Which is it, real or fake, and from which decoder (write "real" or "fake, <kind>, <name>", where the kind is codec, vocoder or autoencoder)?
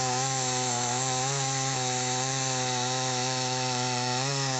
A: fake, autoencoder, DAC-VAE